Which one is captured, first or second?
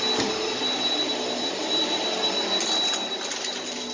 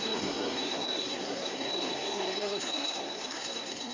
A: first